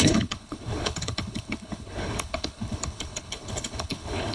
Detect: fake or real fake